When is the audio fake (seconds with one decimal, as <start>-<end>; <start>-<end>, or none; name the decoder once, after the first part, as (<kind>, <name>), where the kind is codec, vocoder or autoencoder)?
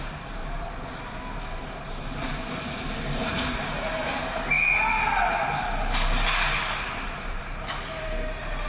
0.4-4.1 (vocoder, BigVGAN v2); 6.6-7.4